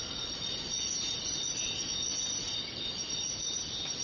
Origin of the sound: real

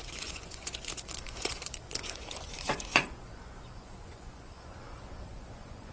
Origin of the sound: fake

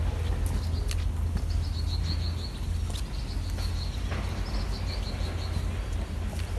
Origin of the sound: real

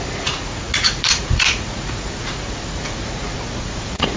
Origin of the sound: fake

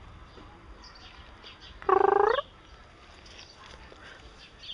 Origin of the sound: real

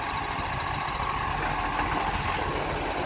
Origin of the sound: real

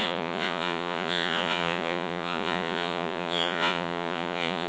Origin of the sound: fake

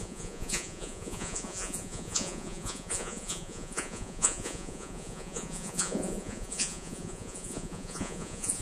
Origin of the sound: fake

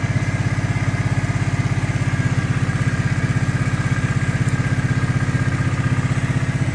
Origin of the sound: real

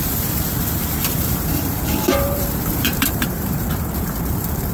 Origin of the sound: fake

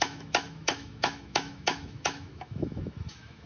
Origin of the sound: fake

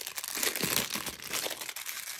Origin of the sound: real